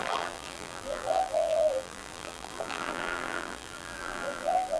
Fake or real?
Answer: fake